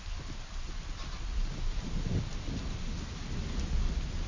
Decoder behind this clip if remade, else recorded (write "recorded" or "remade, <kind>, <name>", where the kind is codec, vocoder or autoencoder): recorded